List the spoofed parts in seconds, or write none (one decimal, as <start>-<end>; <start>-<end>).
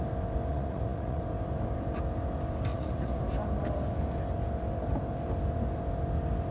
0.5-1.2; 2.7-3.2